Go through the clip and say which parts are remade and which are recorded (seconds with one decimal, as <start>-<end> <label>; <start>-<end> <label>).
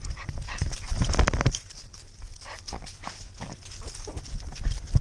0.0-5.0 recorded